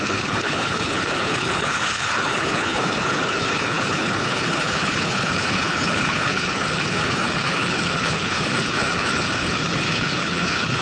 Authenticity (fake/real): fake